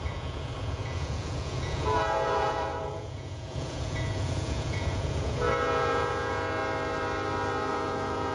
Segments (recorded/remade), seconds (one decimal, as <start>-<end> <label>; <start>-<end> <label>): 0.0-6.6 remade; 6.6-7.7 recorded; 7.7-8.3 remade